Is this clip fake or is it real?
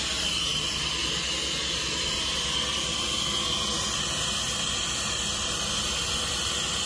real